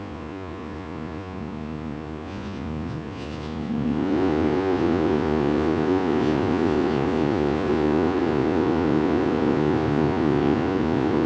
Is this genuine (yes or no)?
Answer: no